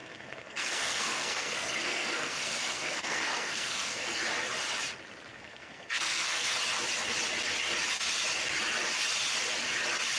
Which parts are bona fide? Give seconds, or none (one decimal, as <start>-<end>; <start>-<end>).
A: 4.2-5.3; 6.5-10.2